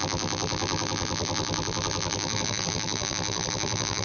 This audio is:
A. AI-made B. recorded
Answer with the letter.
A